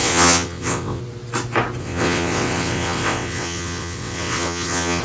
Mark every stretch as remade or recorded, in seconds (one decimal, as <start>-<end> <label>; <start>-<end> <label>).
0.0-1.0 remade; 1.0-1.8 recorded; 1.8-5.0 remade